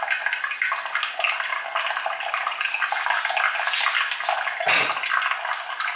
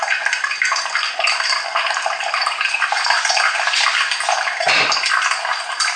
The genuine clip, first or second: first